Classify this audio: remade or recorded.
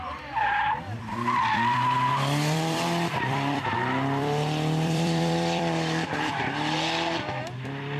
remade